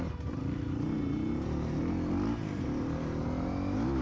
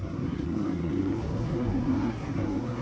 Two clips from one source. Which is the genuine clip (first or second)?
first